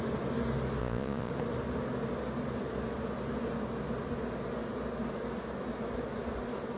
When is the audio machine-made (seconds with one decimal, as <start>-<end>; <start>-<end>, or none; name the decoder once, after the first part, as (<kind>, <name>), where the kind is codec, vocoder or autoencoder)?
0.8-1.3 (vocoder, Vocos)